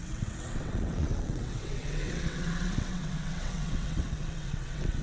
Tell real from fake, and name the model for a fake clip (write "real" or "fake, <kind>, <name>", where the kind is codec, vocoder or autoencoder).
fake, vocoder, WaveNeXt